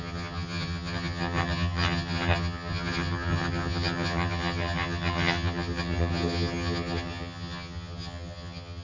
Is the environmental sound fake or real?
fake